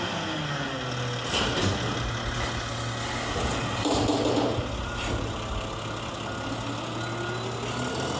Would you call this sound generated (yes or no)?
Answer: no